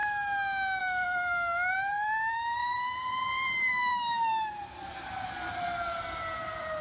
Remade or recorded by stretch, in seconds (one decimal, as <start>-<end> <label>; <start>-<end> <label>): 0.0-0.8 recorded; 0.8-6.8 remade